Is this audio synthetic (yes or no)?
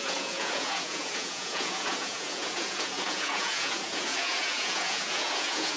yes